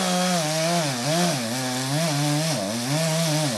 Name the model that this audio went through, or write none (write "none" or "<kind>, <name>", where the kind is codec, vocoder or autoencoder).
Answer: none